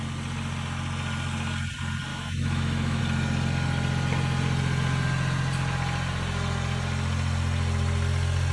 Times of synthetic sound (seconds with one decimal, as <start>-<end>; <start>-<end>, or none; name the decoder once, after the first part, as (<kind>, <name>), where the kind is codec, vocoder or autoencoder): 2.1-3.0 (autoencoder, DAC-VAE)